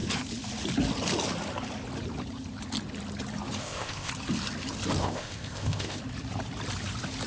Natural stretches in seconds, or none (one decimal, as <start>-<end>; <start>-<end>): 0.0-3.6; 4.1-5.0; 6.0-7.3